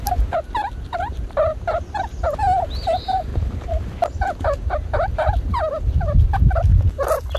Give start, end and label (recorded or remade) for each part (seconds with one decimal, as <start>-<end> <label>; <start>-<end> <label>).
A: 0.0-3.3 remade; 3.3-5.1 recorded; 5.1-6.7 remade; 6.7-7.4 recorded

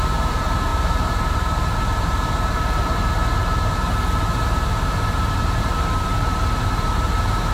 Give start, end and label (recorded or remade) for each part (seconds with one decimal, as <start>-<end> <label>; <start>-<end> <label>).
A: 0.0-7.5 remade

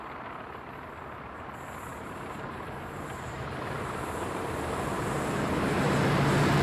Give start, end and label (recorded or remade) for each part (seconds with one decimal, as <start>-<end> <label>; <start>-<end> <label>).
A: 0.0-1.9 recorded; 1.9-4.4 remade; 4.4-6.6 recorded

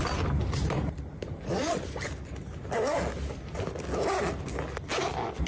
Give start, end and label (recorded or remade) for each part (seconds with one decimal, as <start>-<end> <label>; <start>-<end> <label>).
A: 0.0-0.4 recorded; 0.4-1.5 remade; 1.5-5.5 recorded